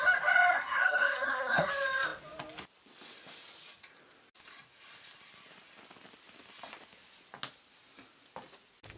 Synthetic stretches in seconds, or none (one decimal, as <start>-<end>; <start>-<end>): 0.5-1.7